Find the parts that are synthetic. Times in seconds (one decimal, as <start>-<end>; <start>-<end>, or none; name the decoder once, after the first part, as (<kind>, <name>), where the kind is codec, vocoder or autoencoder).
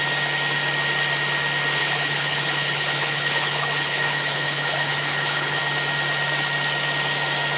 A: 1.8-5.6 (codec, HILCodec)